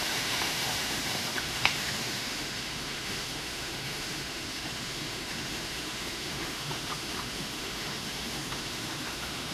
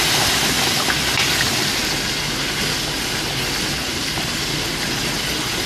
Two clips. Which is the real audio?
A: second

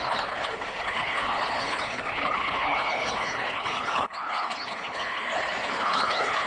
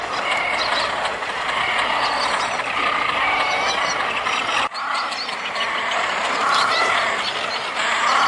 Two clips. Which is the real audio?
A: second